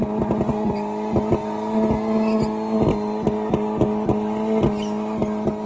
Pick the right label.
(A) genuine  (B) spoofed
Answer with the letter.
A